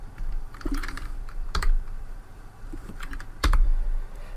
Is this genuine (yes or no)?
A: no